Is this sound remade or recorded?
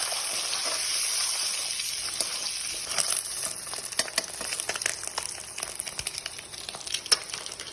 recorded